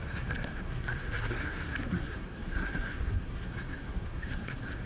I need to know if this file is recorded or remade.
remade